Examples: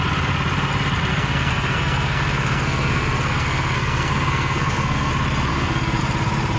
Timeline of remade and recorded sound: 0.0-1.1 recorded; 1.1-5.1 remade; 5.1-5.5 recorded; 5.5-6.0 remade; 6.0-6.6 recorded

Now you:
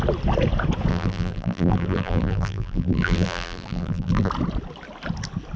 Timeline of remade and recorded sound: 0.0-0.9 recorded; 0.9-4.3 remade; 4.3-5.6 recorded

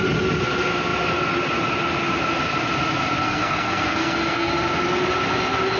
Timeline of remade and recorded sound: 0.0-3.2 recorded; 3.2-4.5 remade; 4.5-5.8 recorded